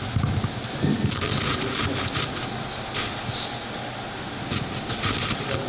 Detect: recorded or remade recorded